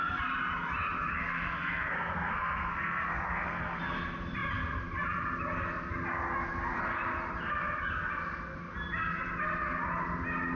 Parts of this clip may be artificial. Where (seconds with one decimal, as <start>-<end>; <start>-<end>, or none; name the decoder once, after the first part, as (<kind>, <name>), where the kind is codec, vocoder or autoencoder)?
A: 1.1-3.8 (codec, SNAC)